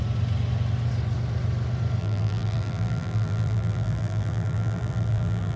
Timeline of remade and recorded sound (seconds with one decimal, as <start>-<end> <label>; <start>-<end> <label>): 0.0-2.0 recorded; 2.0-5.6 remade